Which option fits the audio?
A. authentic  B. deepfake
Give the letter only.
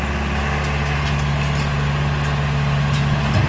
A